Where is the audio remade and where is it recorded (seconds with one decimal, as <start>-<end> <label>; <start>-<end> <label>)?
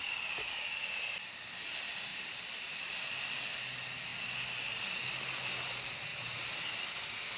0.0-2.1 recorded; 2.1-3.1 remade; 3.1-6.1 recorded; 6.1-6.6 remade; 6.6-7.4 recorded